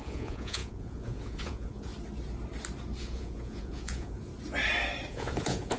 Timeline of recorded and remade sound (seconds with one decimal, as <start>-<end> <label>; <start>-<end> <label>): 0.0-1.9 remade; 1.9-3.0 recorded; 3.0-4.3 remade; 4.3-5.1 recorded; 5.1-5.8 remade